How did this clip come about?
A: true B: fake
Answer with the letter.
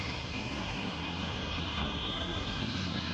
B